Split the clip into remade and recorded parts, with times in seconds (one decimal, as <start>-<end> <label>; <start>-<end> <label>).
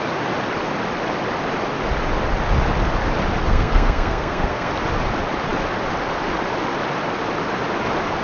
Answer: 0.0-3.5 recorded; 3.5-4.7 remade; 4.7-8.2 recorded